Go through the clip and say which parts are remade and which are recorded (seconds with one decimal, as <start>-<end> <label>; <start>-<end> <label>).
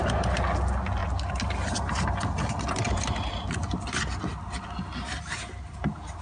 0.0-6.2 recorded